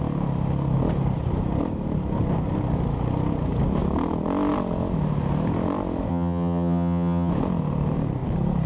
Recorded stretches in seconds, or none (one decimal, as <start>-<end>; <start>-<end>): 0.0-6.1; 7.3-8.7